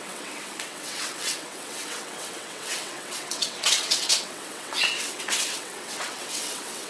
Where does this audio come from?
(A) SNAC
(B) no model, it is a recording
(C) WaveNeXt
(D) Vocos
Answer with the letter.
C